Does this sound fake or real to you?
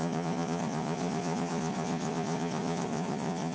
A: fake